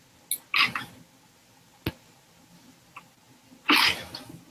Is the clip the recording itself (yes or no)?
yes